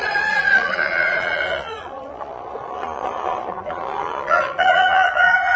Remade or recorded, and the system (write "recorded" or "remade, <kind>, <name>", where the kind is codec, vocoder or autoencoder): remade, vocoder, Vocos